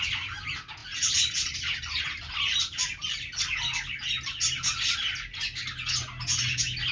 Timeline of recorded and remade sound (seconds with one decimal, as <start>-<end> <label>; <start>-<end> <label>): 0.0-6.9 recorded